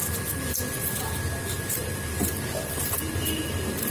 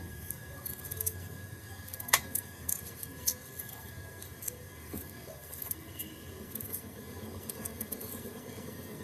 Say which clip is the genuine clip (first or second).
first